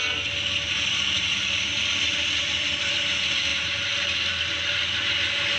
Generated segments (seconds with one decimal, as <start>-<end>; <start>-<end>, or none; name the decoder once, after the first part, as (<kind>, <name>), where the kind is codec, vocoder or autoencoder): none